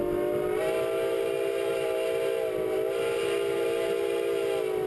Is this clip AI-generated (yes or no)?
no